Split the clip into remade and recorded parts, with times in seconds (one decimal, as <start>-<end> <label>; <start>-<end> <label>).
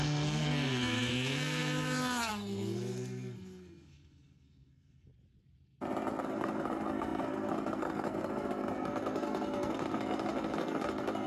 0.0-5.1 remade; 5.1-6.2 recorded; 6.2-11.3 remade